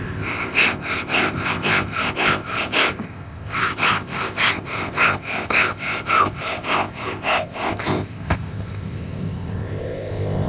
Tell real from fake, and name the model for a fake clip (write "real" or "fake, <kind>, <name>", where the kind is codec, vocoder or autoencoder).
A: fake, codec, ZipCodec